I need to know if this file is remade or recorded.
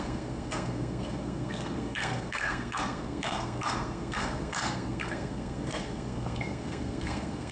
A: remade